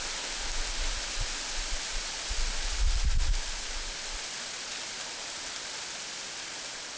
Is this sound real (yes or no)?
yes